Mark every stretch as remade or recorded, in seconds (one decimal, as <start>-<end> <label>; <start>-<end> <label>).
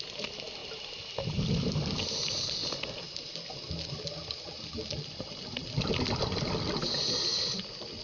0.0-8.0 recorded